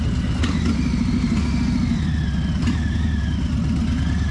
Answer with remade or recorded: recorded